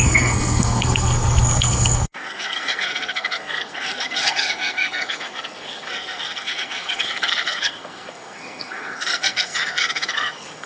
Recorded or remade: remade